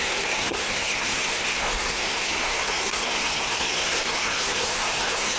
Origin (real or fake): fake